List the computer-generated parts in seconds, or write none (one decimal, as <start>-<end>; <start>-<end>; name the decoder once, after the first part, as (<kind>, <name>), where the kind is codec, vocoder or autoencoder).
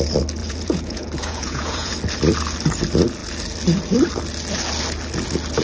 0.4-1.9 (vocoder, Vocos)